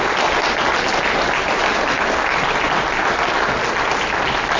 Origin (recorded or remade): recorded